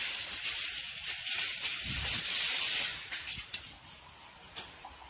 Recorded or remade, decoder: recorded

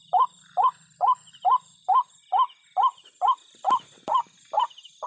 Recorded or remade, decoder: recorded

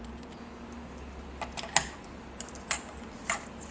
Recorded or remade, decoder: recorded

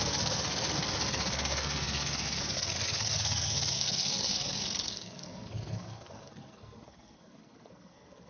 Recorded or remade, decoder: remade, codec, SNAC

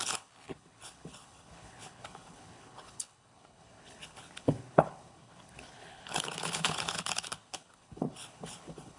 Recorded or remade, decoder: remade, codec, HILCodec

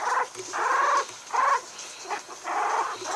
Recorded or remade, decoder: recorded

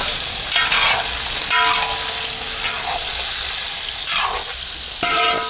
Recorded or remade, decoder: recorded